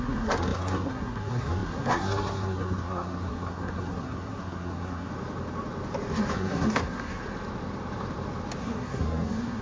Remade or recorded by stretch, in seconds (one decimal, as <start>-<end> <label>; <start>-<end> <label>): 0.0-5.1 remade; 5.1-6.3 recorded; 6.3-7.2 remade; 7.2-8.6 recorded; 8.6-9.6 remade